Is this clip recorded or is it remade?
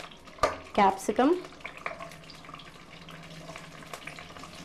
recorded